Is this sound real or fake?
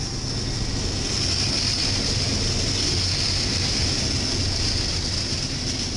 real